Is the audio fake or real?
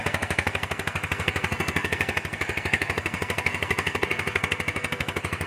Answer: fake